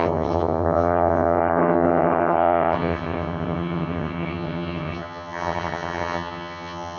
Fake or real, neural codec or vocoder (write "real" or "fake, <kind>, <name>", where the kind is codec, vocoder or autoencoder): fake, vocoder, HiFi-GAN